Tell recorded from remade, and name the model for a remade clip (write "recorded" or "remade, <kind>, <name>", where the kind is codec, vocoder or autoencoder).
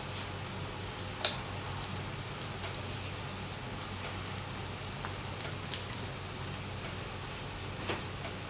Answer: recorded